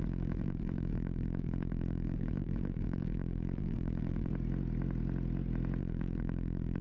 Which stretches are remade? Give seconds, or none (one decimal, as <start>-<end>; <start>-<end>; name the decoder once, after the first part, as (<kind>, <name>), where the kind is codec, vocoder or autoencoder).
0.0-4.3 (vocoder, BigVGAN v2); 5.8-6.8